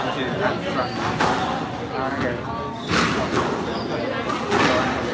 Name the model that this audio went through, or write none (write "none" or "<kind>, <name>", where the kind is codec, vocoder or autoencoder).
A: none